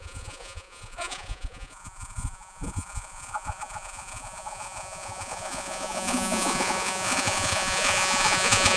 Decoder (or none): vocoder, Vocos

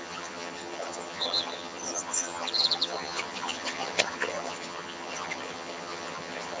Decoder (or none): vocoder, HiFi-GAN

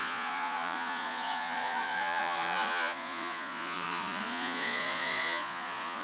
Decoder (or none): vocoder, Vocos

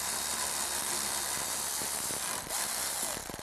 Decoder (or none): none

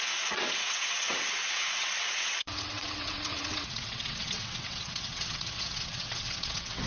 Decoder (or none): vocoder, WaveNeXt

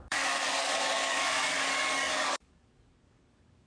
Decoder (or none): codec, DAC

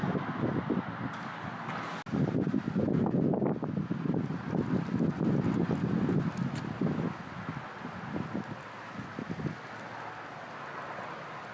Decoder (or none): none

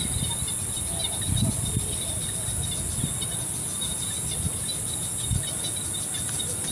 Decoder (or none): none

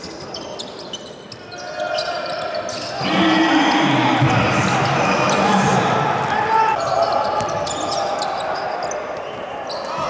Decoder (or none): none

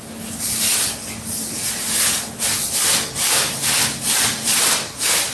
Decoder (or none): none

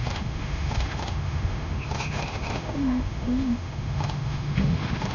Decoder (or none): autoencoder, DAC-VAE